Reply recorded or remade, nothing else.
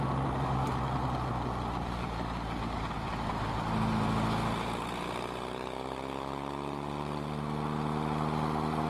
recorded